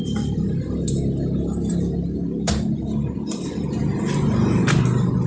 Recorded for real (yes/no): yes